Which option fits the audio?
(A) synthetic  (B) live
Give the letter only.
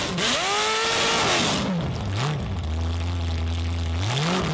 B